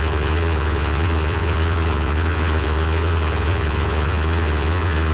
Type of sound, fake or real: fake